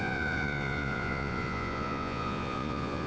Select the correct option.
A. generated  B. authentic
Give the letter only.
A